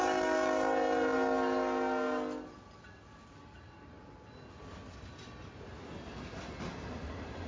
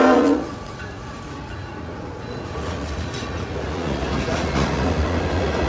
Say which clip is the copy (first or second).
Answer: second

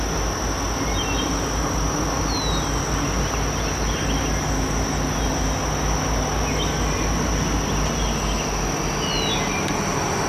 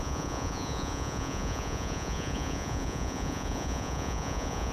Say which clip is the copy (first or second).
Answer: second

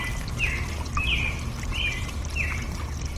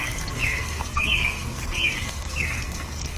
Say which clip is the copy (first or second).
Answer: second